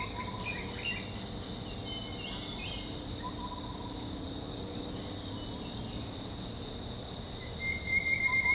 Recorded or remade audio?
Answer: recorded